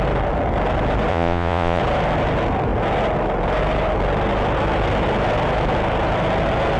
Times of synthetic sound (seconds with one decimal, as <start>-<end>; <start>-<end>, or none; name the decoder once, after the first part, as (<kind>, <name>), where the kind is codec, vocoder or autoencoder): 1.1-1.8 (vocoder, Vocos)